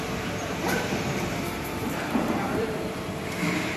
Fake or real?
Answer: fake